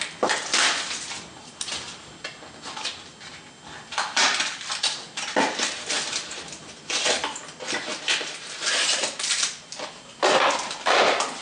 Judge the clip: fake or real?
real